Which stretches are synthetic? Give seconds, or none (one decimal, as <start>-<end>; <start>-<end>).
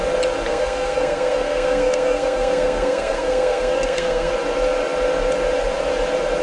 0.5-4.3